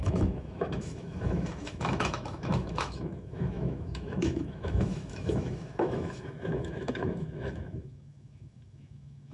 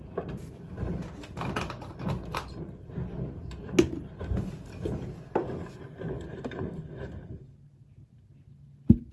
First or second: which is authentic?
second